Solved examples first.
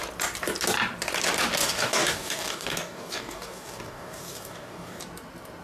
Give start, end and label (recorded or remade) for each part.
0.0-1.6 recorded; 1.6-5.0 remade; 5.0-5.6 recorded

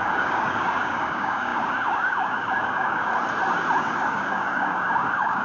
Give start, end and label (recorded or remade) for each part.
0.0-3.1 remade; 3.1-3.8 recorded; 3.8-5.4 remade